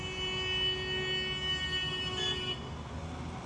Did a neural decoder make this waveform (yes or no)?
no